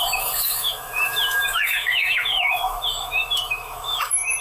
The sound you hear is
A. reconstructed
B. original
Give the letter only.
A